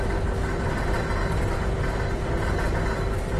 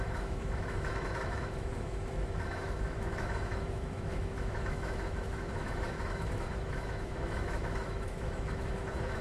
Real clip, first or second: first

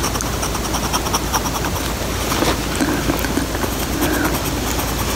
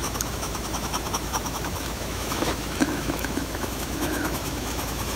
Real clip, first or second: first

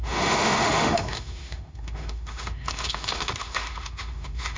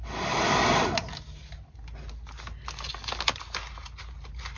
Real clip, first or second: second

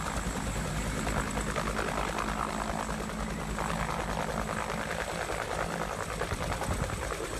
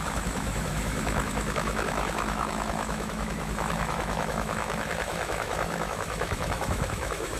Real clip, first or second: first